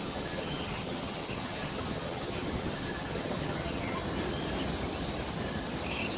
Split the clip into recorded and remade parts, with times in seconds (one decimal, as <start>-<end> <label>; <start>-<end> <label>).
0.0-4.0 remade; 4.0-6.2 recorded